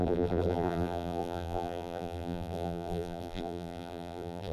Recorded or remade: remade